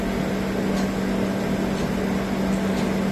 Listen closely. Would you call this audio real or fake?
real